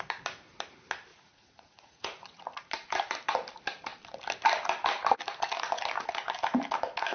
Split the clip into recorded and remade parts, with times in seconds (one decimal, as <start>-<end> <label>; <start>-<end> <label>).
0.0-1.1 recorded; 1.1-2.7 remade; 2.7-7.1 recorded